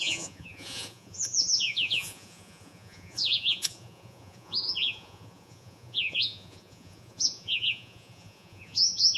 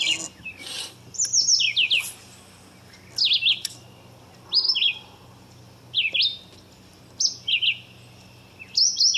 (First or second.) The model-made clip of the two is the first